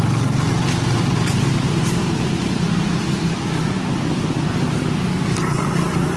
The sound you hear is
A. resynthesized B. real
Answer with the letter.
B